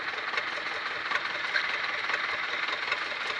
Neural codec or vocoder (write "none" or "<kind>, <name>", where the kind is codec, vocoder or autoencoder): none